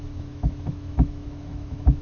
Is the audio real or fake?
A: fake